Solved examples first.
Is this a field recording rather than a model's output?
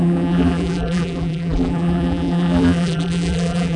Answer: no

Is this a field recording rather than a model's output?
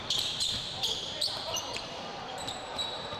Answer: no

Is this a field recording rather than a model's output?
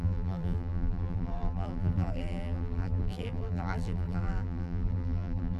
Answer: no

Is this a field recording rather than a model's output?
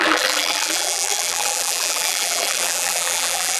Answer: no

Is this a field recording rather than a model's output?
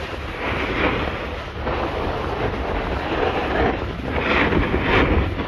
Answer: yes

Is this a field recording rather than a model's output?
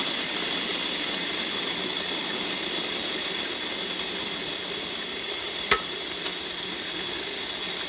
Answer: no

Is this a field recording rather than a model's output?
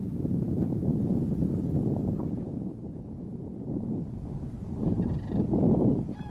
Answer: no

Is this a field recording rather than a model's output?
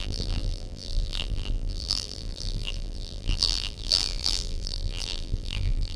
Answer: no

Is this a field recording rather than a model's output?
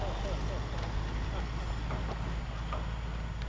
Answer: yes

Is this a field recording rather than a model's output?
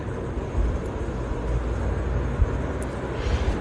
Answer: yes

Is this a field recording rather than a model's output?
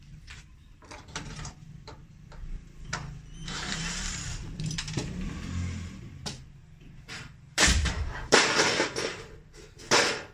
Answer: no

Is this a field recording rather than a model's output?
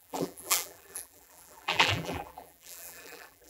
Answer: no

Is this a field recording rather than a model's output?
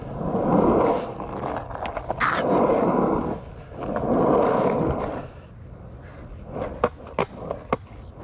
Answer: yes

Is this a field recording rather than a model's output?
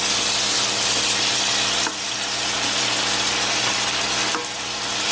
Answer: yes